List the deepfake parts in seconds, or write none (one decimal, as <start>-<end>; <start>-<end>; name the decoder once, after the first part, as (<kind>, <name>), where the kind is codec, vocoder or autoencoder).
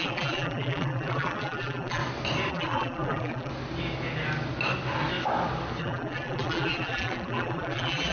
0.0-2.0 (vocoder, BigVGAN v2); 2.5-3.5; 5.8-8.1